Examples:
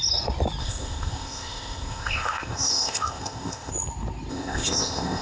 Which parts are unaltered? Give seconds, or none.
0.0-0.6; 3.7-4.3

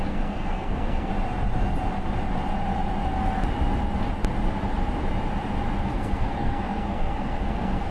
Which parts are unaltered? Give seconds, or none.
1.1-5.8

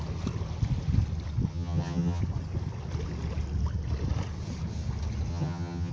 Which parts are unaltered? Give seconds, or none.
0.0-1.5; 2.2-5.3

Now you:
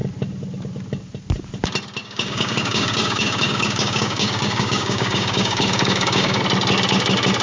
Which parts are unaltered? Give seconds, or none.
0.0-2.0; 6.4-7.4